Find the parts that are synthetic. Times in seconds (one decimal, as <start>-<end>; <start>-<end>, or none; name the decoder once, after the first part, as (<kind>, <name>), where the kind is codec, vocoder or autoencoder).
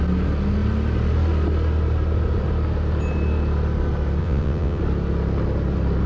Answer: 4.2-4.8 (vocoder, WaveNeXt)